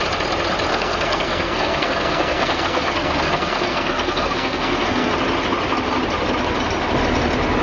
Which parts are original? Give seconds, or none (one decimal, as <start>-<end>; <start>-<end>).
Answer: 0.0-0.7; 5.1-7.6